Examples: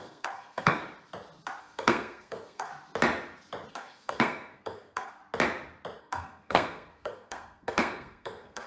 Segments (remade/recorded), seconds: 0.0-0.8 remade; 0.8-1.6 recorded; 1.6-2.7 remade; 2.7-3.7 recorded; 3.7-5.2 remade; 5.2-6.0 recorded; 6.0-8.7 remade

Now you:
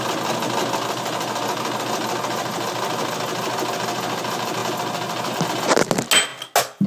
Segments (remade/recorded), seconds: 0.0-6.9 recorded

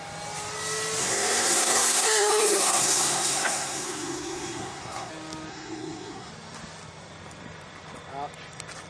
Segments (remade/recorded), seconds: 0.0-1.0 recorded; 1.0-5.1 remade; 5.1-5.5 recorded; 5.5-6.3 remade; 6.3-8.9 recorded

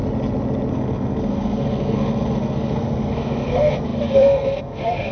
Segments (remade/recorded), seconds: 0.0-0.7 recorded; 0.7-5.1 remade